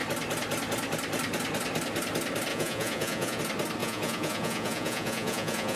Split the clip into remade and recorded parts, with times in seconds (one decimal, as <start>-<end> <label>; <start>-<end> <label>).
0.0-2.5 recorded; 2.5-3.4 remade; 3.4-3.8 recorded; 3.8-5.8 remade